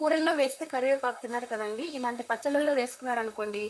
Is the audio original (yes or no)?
no